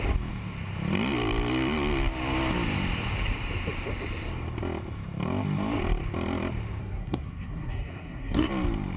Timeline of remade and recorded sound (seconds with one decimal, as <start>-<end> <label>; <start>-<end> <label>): 0.0-6.8 recorded; 6.8-8.5 remade; 8.5-9.0 recorded